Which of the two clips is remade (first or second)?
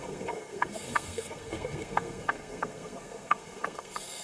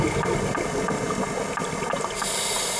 first